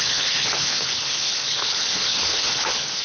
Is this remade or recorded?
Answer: remade